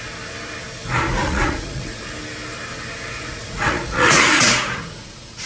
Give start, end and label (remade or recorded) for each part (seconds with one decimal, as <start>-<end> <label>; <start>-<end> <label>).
0.0-1.2 recorded; 1.2-2.0 remade; 2.0-3.1 recorded; 3.1-5.5 remade